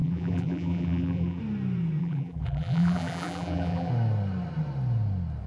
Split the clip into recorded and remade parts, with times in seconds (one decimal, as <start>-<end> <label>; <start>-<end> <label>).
0.0-1.4 remade; 1.4-2.0 recorded; 2.0-3.9 remade; 3.9-5.5 recorded